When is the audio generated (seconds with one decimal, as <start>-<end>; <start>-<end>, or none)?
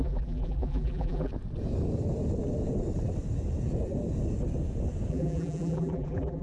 0.0-1.3; 5.1-6.4